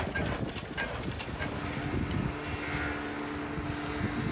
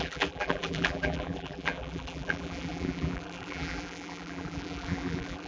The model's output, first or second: second